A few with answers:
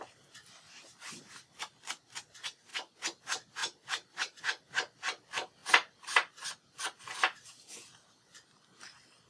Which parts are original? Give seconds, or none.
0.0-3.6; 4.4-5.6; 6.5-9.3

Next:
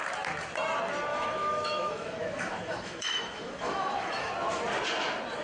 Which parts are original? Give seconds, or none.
0.0-1.1; 4.3-5.4

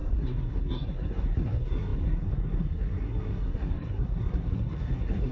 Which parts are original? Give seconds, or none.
none

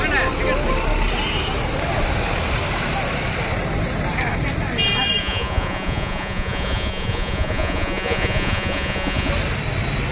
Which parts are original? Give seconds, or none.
0.0-5.2; 9.3-10.1